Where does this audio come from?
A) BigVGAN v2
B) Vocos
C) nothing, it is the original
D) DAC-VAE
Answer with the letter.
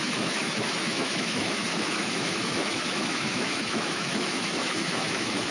D